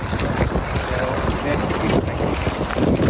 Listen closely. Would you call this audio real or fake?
real